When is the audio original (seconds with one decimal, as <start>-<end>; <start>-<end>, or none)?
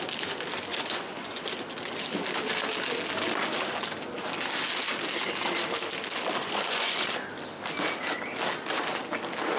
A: 0.0-0.7; 1.4-6.4; 7.1-9.6